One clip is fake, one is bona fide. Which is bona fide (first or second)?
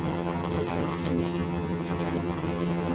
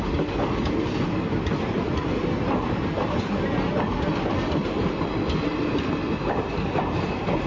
second